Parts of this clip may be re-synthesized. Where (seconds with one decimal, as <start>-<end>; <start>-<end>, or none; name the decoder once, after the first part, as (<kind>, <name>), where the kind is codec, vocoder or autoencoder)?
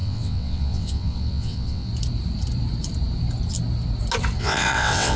0.0-1.9 (vocoder, WaveNeXt); 4.4-5.2